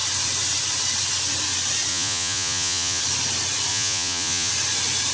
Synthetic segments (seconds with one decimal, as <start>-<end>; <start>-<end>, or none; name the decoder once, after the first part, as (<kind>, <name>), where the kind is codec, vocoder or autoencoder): 1.9-3.0 (vocoder, Vocos); 3.7-4.5